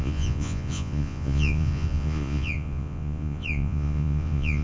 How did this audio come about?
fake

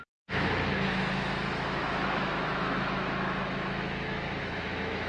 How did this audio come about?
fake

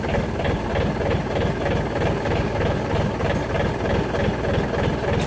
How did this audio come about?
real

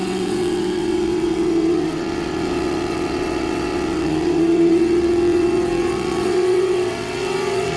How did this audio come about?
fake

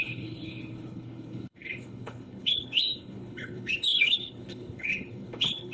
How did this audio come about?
fake